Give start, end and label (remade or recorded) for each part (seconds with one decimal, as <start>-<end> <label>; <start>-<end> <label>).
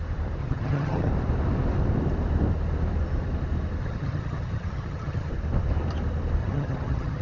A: 0.0-0.4 recorded; 0.4-1.1 remade; 1.1-3.8 recorded; 3.8-5.3 remade; 5.3-6.4 recorded; 6.4-7.2 remade